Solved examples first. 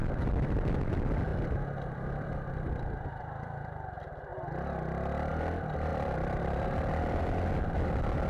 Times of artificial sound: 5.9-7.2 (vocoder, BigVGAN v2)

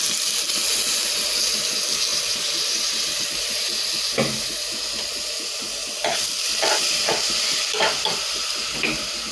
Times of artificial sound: 2.1-3.6 (vocoder, BigVGAN v2); 5.8-7.1